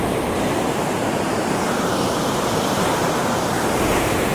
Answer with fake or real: fake